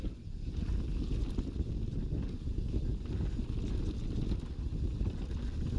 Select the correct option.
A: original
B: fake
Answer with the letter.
A